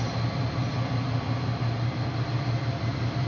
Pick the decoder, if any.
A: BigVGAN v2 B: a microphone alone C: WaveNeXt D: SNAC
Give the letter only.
A